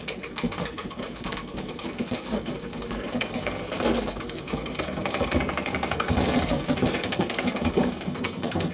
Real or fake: fake